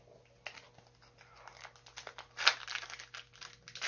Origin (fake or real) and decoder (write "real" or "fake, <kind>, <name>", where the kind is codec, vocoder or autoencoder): real